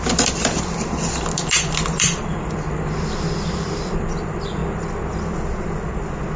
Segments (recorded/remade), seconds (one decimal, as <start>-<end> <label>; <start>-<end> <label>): 0.0-2.2 remade; 2.2-3.0 recorded; 3.0-4.6 remade; 4.6-6.4 recorded